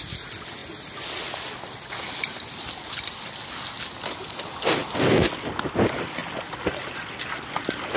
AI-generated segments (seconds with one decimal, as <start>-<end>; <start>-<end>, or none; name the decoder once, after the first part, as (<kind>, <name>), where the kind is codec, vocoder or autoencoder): none